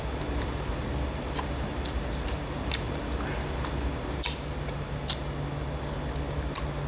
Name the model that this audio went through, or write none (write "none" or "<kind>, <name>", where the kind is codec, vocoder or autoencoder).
none